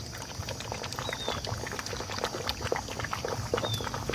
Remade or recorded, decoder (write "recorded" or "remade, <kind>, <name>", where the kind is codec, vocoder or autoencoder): recorded